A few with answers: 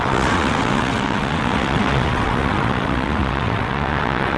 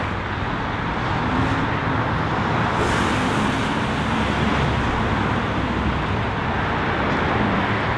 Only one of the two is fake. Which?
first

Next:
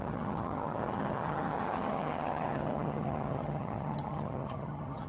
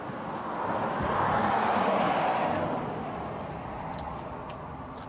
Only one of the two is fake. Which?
first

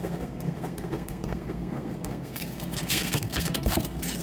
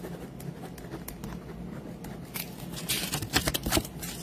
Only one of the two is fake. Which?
first